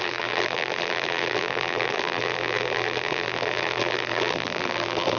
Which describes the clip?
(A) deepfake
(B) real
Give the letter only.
A